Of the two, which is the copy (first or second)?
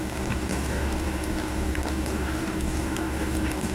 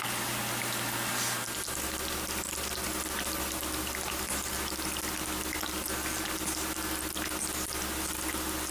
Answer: first